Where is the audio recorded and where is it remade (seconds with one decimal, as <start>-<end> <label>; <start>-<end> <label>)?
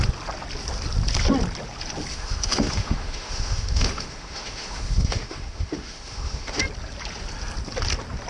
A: 0.0-2.1 recorded; 2.1-6.6 remade; 6.6-8.3 recorded